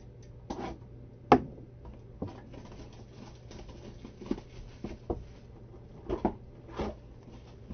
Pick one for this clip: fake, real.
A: real